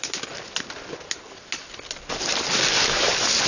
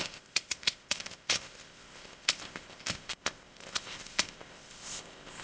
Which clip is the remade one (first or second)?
second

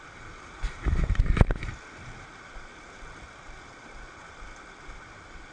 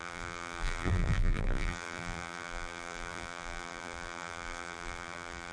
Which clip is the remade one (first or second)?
second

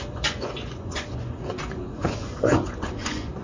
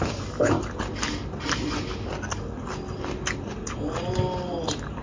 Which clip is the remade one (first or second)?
first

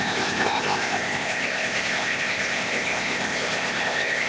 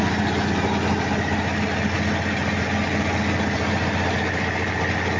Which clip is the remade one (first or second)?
first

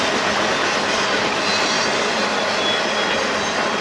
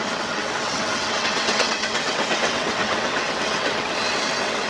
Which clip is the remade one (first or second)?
second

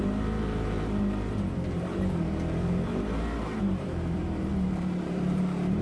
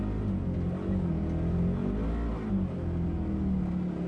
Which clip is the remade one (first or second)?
first